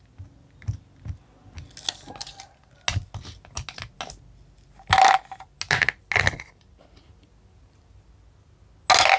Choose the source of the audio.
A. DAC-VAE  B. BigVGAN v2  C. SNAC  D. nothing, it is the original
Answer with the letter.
D